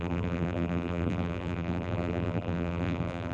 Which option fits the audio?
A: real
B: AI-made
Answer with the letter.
B